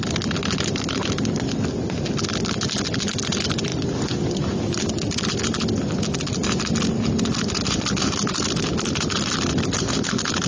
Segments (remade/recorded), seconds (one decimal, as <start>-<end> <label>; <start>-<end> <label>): 0.0-10.5 recorded

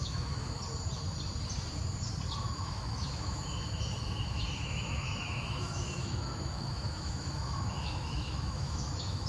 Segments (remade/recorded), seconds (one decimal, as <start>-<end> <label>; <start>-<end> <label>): 0.0-0.6 remade; 0.6-2.4 recorded; 2.4-9.3 remade